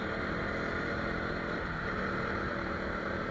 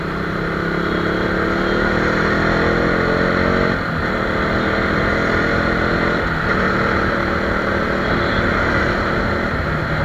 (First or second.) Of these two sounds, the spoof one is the first